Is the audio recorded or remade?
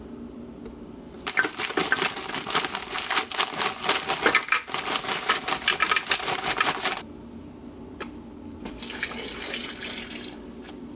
recorded